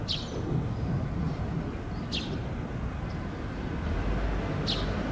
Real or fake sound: real